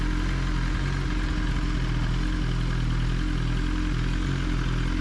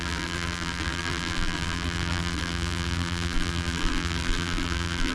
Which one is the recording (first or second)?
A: first